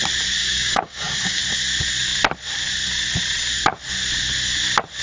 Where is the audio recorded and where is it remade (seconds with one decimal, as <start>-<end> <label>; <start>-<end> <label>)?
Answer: 0.0-0.4 recorded; 0.4-1.4 remade; 1.4-5.0 recorded